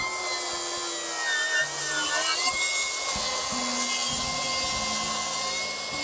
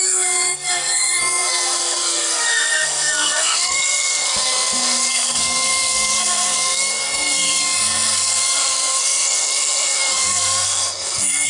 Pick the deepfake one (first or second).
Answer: second